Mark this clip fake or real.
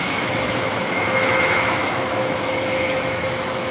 fake